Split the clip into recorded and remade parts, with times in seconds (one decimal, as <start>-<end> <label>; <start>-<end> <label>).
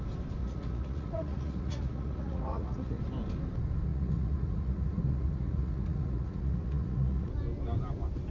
0.0-0.4 recorded; 0.4-3.0 remade; 3.0-3.9 recorded; 3.9-7.3 remade; 7.3-8.3 recorded